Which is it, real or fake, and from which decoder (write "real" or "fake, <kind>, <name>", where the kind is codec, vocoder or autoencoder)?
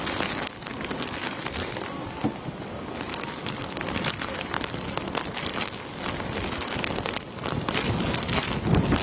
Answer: real